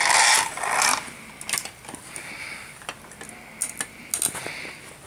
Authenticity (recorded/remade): recorded